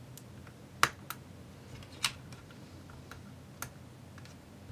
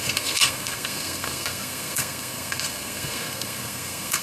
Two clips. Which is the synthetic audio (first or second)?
second